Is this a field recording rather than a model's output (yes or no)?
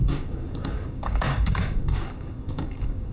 no